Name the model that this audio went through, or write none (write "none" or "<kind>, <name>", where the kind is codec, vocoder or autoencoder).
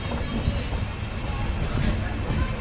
none